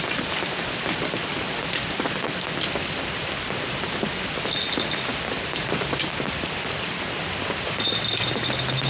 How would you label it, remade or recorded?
recorded